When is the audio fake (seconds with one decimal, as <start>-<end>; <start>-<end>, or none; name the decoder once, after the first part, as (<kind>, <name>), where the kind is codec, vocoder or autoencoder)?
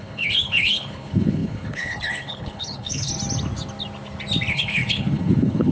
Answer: 0.0-3.1 (codec, HILCodec); 4.5-5.7